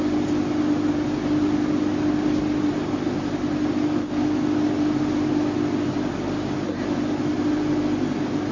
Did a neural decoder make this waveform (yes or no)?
no